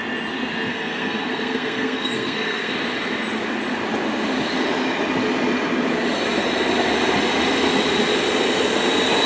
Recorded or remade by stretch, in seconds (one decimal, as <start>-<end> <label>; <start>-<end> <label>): 0.0-0.7 recorded; 0.7-2.7 remade; 2.7-9.3 recorded